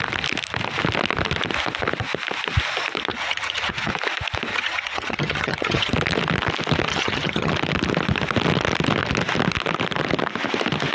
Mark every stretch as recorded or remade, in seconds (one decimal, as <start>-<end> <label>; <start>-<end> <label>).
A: 0.0-3.1 recorded; 3.1-3.9 remade; 3.9-4.5 recorded; 4.5-5.9 remade; 5.9-6.9 recorded; 6.9-7.5 remade; 7.5-10.9 recorded